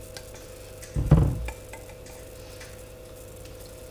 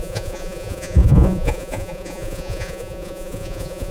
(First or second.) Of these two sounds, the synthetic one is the second